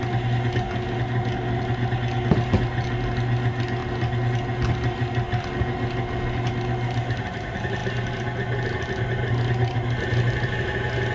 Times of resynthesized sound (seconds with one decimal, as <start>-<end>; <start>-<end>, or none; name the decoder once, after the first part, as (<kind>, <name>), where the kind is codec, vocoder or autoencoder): none